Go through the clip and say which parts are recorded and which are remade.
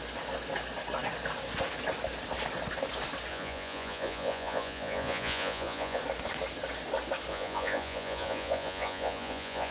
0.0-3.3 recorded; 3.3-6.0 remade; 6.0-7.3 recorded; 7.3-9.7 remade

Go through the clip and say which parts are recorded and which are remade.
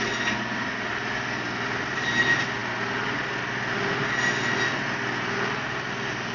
0.0-6.3 recorded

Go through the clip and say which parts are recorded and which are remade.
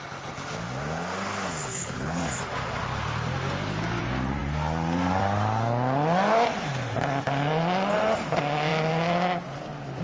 0.0-1.6 recorded; 1.6-2.2 remade; 2.2-10.0 recorded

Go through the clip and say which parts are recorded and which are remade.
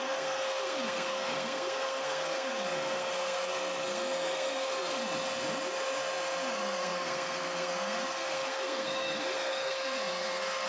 0.0-5.0 remade; 5.0-6.5 recorded; 6.5-10.7 remade